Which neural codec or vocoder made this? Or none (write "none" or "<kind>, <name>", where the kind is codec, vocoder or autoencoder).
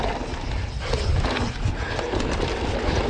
none